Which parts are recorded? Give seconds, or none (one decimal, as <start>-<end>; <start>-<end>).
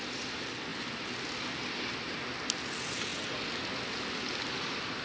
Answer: 0.0-5.0